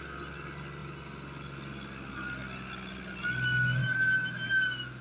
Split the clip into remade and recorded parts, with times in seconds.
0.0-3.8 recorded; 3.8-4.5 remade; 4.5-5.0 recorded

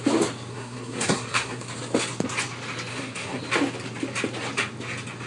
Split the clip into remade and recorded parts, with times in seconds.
0.0-0.5 recorded; 0.5-1.7 remade; 1.7-2.9 recorded; 2.9-3.4 remade; 3.4-5.3 recorded

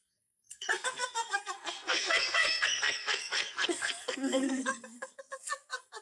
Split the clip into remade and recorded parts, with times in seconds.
0.0-6.0 remade

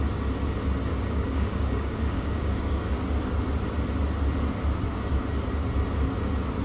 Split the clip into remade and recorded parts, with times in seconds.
0.0-0.9 recorded; 0.9-2.9 remade; 2.9-6.6 recorded

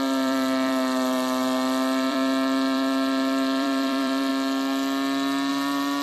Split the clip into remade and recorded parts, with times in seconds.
0.0-4.3 remade; 4.3-5.5 recorded; 5.5-6.0 remade

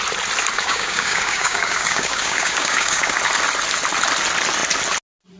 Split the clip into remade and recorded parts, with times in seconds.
0.0-0.6 recorded; 0.6-3.2 remade; 3.2-5.4 recorded

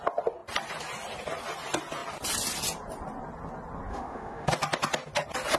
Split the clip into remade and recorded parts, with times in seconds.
0.0-3.9 recorded; 3.9-4.5 remade; 4.5-5.6 recorded

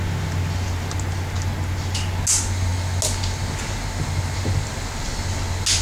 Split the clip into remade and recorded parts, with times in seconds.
0.0-5.8 recorded